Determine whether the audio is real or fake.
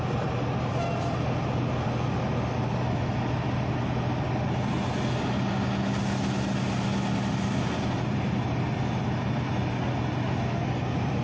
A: real